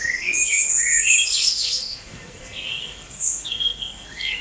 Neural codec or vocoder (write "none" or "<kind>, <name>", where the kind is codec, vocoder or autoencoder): codec, SNAC